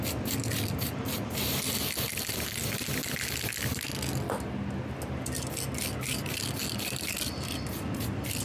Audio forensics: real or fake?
real